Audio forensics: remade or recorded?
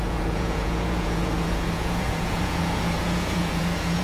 remade